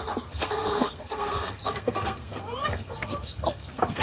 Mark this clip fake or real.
fake